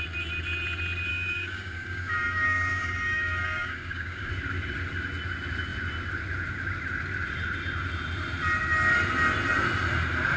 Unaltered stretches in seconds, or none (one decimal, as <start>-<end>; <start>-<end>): 0.0-1.1; 4.3-10.4